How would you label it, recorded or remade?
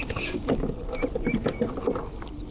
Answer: recorded